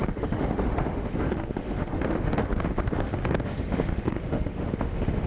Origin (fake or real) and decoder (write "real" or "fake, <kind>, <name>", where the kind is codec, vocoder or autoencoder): fake, autoencoder, DAC-VAE